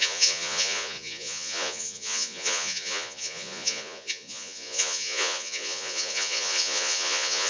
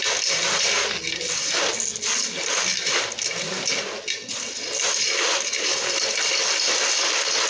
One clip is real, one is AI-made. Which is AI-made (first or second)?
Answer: first